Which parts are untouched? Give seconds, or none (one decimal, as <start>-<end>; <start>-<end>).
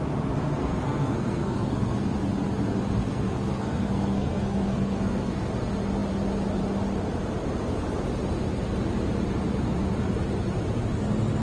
0.0-0.6; 2.1-3.0; 5.5-11.4